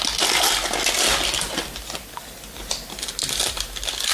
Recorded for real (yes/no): yes